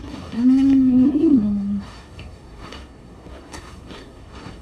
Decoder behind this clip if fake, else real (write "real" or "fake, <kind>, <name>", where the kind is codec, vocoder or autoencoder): fake, codec, SNAC